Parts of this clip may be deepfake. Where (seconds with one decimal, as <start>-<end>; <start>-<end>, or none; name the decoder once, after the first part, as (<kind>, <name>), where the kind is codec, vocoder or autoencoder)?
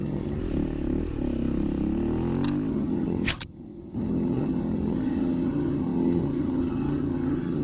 0.0-0.4 (vocoder, HiFi-GAN); 2.7-7.6